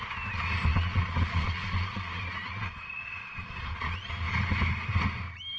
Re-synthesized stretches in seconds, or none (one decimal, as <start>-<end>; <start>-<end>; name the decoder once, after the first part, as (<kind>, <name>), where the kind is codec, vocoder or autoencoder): 0.7-4.1 (vocoder, Vocos)

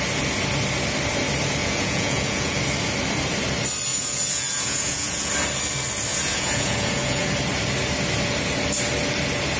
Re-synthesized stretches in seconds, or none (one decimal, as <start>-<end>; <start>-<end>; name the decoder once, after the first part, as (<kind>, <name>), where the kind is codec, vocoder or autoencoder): 1.6-2.6 (vocoder, Vocos); 3.9-5.3; 6.1-7.3

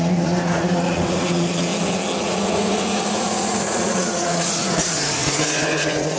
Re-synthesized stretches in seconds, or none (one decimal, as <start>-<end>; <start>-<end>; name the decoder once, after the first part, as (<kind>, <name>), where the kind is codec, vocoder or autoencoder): 0.0-1.7 (vocoder, Vocos); 2.2-6.2